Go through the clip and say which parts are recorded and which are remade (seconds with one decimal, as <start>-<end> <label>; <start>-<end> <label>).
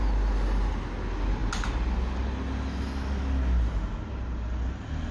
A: 0.0-5.1 recorded